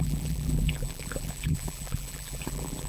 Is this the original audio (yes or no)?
no